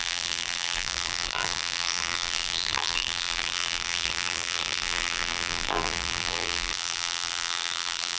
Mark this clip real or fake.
fake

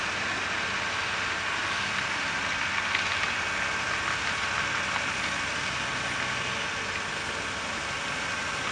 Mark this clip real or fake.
real